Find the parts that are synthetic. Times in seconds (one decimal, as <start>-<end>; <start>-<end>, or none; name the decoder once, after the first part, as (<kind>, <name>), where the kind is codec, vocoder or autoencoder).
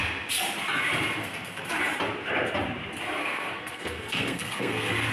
1.2-1.8 (codec, SNAC); 3.2-5.1